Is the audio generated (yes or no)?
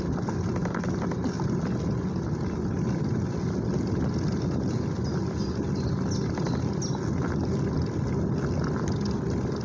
no